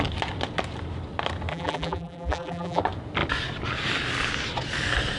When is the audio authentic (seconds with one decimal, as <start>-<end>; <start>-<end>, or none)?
0.0-1.5; 2.8-5.2

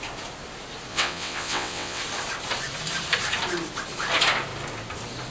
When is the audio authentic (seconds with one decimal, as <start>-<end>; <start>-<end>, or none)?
0.0-0.9; 2.0-5.3

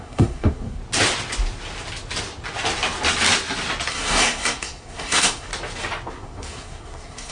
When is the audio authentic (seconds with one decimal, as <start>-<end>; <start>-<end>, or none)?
0.8-3.9; 5.5-6.1

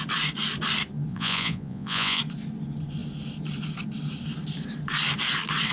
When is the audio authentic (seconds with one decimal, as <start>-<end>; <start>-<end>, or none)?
0.0-1.1; 2.2-5.7

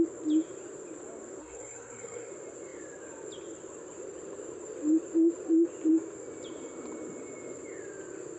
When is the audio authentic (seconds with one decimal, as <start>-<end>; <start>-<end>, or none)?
0.0-1.4; 2.3-8.4

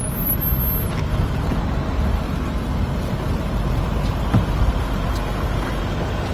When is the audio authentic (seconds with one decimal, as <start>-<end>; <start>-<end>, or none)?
0.0-1.1; 1.6-2.0; 5.8-6.3